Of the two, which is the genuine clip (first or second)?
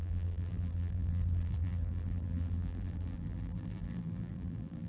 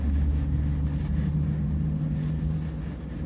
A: second